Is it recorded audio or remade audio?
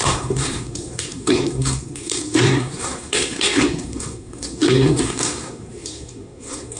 remade